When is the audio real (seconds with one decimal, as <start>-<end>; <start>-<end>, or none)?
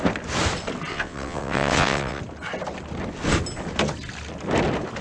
0.0-0.9; 2.2-5.0